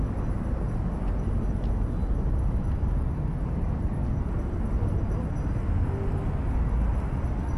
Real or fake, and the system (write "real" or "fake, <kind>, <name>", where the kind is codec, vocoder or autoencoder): real